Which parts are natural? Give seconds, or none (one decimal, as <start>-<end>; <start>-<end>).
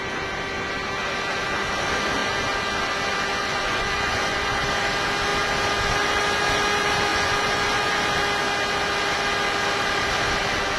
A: 0.0-3.4; 4.7-7.1; 8.0-10.8